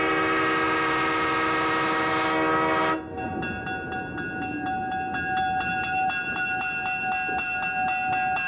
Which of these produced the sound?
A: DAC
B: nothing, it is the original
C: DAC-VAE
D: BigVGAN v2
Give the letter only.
B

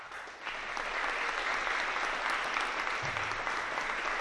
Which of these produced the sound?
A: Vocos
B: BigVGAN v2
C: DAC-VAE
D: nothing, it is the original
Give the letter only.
D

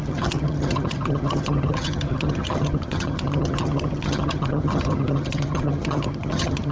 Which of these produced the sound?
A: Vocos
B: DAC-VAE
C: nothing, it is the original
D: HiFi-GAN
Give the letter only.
D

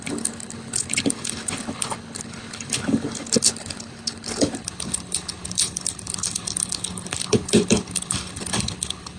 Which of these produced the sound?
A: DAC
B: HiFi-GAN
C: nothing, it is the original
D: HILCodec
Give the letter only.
D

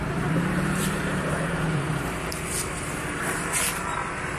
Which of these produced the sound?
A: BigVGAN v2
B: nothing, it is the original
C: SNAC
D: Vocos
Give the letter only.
A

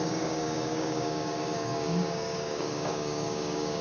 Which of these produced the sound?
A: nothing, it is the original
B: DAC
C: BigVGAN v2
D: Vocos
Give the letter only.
B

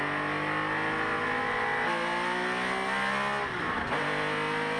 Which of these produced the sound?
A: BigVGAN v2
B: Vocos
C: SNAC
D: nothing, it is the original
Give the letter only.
D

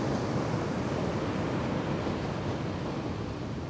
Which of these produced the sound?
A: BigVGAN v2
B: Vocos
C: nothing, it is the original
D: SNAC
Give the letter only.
C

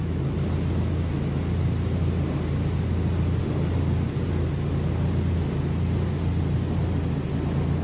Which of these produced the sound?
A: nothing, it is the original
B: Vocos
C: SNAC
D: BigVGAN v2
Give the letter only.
A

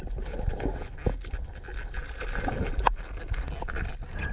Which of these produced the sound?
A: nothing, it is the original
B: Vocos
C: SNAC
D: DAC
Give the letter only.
A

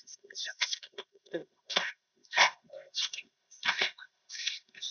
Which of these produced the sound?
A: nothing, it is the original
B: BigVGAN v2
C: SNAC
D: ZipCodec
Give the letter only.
D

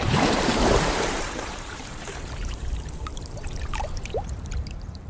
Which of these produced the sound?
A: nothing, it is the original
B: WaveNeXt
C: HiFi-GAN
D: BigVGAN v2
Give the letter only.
D